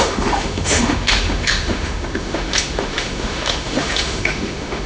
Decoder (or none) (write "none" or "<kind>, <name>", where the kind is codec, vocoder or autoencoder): autoencoder, DAC-VAE